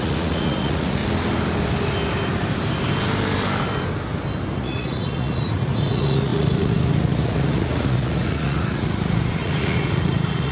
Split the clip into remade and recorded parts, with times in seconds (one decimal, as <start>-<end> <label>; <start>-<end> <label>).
0.0-1.0 remade; 1.0-4.6 recorded; 4.6-10.5 remade